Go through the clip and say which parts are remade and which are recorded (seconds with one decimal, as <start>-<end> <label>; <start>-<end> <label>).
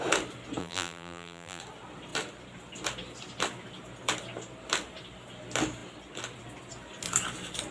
0.0-0.6 recorded; 0.6-1.6 remade; 1.6-7.7 recorded